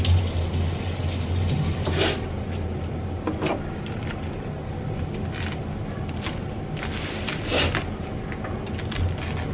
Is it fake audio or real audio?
real